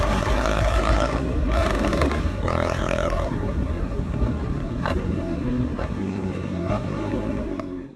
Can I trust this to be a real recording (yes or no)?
no